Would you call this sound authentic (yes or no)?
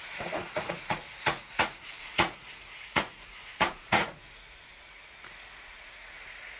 no